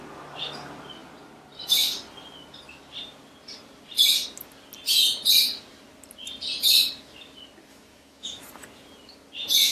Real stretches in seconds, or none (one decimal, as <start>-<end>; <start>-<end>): 0.0-7.7; 8.4-9.7